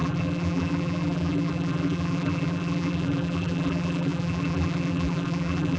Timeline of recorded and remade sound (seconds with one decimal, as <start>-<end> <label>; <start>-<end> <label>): 0.0-5.8 remade